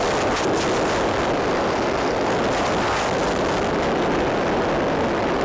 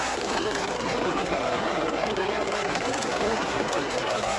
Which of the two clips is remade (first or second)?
second